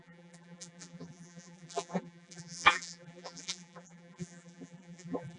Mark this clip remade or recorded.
remade